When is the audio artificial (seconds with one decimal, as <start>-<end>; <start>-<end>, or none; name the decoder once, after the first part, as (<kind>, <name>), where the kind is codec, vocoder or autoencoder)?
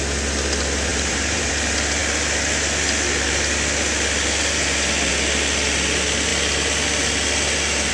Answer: 0.9-1.5 (vocoder, BigVGAN v2)